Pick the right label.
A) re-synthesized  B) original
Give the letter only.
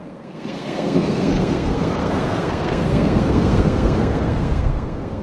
A